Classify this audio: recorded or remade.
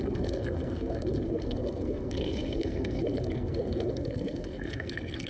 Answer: remade